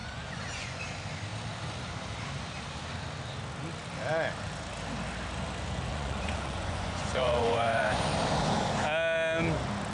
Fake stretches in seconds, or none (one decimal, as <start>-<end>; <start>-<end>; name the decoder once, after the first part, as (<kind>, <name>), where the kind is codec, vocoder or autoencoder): 0.0-0.8 (vocoder, Vocos); 5.9-8.1